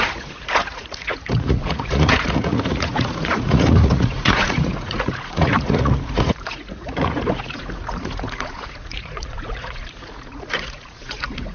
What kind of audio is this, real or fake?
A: fake